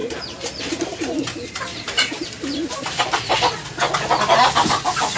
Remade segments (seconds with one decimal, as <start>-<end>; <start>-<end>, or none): 0.0-0.7; 1.7-3.5